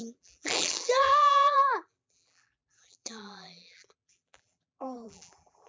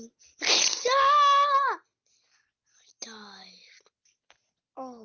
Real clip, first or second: second